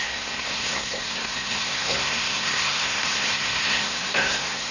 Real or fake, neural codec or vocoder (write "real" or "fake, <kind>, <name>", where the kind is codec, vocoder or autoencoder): fake, codec, SNAC